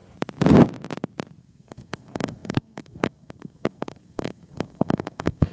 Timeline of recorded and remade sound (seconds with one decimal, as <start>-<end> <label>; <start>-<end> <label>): 0.0-1.4 recorded; 1.4-5.5 remade

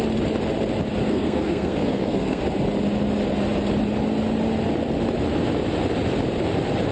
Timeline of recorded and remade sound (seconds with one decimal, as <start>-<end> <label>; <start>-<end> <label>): 0.0-1.0 recorded; 1.0-2.4 remade; 2.4-6.9 recorded

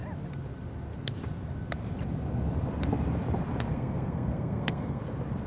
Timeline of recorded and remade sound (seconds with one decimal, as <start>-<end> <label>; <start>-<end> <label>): 0.0-3.7 recorded; 3.7-5.0 remade; 5.0-5.5 recorded

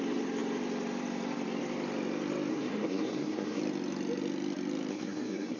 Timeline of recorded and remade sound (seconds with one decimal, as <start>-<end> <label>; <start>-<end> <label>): 0.0-2.5 recorded; 2.5-3.6 remade; 3.6-4.9 recorded; 4.9-5.6 remade

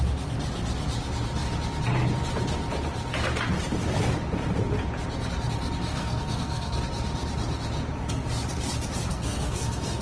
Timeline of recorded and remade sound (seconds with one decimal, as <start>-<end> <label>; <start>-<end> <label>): 0.0-5.9 recorded; 5.9-6.8 remade; 6.8-9.1 recorded; 9.1-10.0 remade